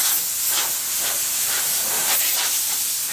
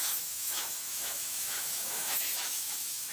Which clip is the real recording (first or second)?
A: first